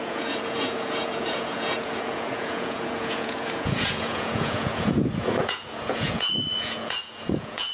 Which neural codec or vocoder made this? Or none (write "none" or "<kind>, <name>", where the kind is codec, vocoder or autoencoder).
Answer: vocoder, Vocos